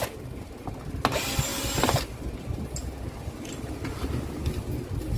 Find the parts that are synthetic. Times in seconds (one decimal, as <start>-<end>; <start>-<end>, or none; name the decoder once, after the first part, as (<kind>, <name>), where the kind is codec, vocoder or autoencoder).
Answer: none